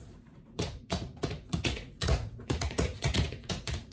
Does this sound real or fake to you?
fake